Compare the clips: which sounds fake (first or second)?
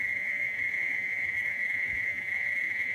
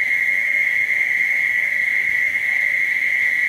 first